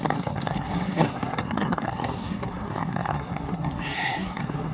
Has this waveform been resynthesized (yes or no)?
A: yes